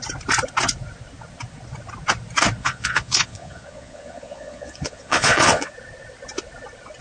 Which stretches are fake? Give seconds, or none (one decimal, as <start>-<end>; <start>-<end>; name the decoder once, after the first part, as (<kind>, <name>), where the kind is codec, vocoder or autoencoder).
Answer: 2.6-5.7 (vocoder, Vocos)